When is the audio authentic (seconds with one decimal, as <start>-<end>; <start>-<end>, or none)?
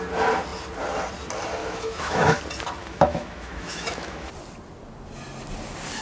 0.0-1.6; 2.4-2.8; 4.3-6.0